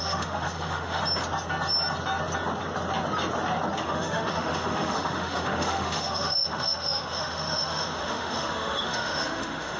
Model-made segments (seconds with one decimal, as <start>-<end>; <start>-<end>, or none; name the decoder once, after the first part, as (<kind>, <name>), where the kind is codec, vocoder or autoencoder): 0.0-1.0 (autoencoder, DAC-VAE); 3.8-9.8